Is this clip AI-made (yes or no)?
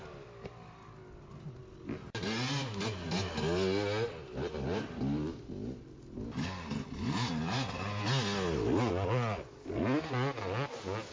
no